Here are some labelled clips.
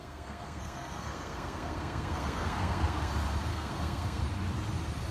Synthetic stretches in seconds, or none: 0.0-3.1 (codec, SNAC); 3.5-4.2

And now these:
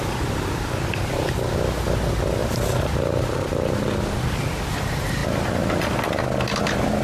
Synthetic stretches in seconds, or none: none

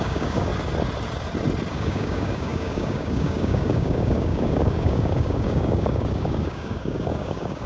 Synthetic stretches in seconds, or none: 0.0-0.5 (codec, DAC); 1.7-7.7

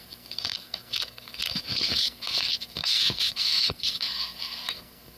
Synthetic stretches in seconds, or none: 0.0-5.2 (codec, SNAC)